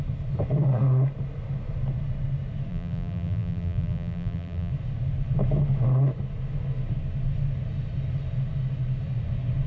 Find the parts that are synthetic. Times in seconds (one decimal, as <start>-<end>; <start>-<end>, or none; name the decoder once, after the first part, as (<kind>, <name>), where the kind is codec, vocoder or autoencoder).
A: 2.7-4.7 (vocoder, BigVGAN v2)